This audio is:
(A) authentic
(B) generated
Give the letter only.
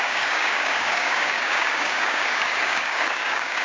B